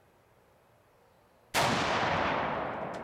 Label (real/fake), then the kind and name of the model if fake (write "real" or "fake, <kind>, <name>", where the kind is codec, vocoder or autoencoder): real